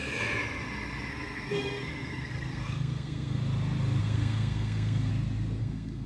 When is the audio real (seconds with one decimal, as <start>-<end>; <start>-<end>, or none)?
0.0-1.1; 3.4-4.0; 5.1-5.6